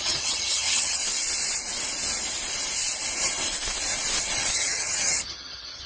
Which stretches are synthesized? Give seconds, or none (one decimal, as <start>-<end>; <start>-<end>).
0.0-1.0; 4.5-5.9